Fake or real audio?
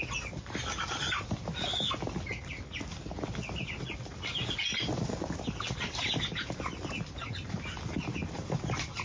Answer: real